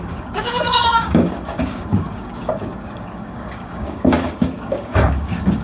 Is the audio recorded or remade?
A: remade